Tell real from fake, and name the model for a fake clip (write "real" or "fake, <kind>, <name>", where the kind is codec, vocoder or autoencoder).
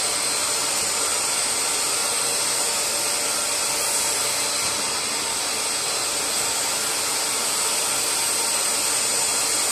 real